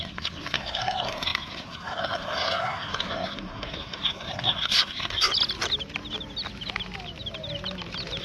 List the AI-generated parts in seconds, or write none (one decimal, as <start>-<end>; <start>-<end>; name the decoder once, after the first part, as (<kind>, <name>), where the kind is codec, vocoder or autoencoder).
0.0-5.3 (codec, SNAC)